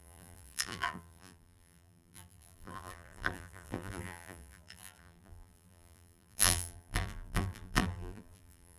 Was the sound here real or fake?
fake